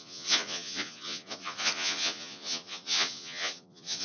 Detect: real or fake fake